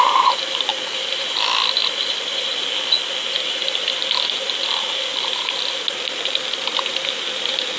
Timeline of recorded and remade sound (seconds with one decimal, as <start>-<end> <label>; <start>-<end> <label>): 0.0-7.8 recorded